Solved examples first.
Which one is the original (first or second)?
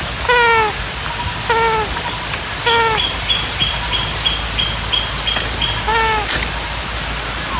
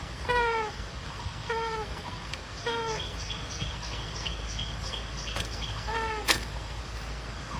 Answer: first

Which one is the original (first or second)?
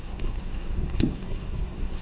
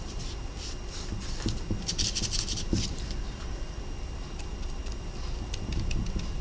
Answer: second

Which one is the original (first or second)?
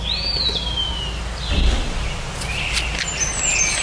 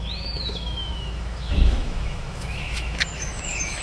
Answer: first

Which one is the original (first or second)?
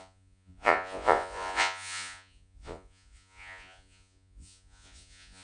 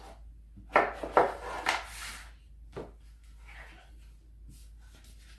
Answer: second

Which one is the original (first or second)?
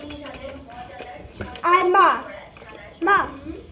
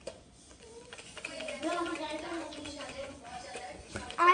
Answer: first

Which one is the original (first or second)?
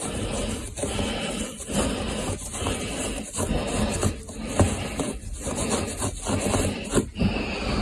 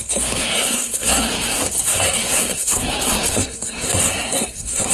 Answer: first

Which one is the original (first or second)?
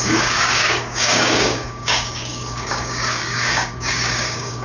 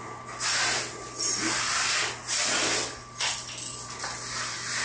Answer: second